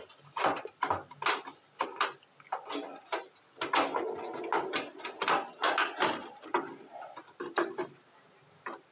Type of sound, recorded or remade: recorded